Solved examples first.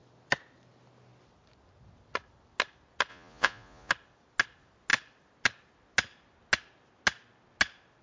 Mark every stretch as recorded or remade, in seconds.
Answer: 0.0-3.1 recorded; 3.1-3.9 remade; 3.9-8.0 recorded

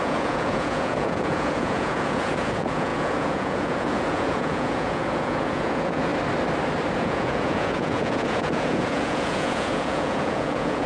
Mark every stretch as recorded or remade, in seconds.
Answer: 0.0-6.1 remade; 6.1-6.9 recorded; 6.9-10.9 remade

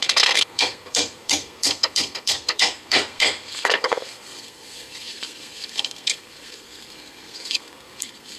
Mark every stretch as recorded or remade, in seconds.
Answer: 0.0-8.4 remade

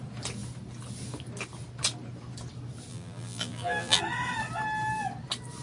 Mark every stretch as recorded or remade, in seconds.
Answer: 0.0-2.9 recorded; 2.9-4.0 remade; 4.0-5.6 recorded

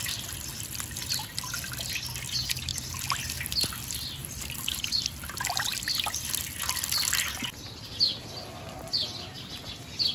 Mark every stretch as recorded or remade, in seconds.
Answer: 0.0-4.2 recorded; 4.2-5.0 remade; 5.0-10.1 recorded

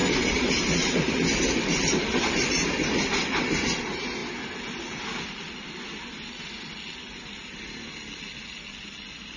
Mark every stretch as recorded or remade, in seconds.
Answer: 0.0-9.4 recorded

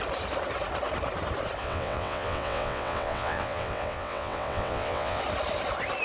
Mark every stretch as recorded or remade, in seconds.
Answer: 0.0-1.6 recorded; 1.6-5.2 remade; 5.2-6.0 recorded

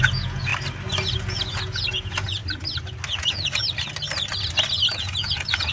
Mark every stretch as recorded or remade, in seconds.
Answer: 0.0-0.5 remade; 0.5-1.2 recorded; 1.2-2.4 remade; 2.4-3.1 recorded; 3.1-3.6 remade; 3.6-4.9 recorded; 4.9-5.7 remade